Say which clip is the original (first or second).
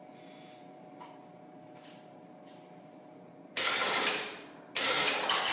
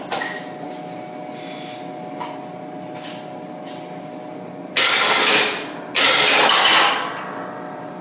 second